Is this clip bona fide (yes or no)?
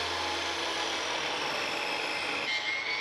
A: yes